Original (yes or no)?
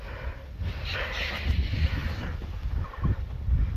yes